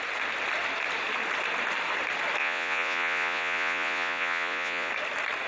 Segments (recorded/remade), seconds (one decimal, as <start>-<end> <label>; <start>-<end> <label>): 0.0-2.4 recorded; 2.4-4.9 remade; 4.9-5.5 recorded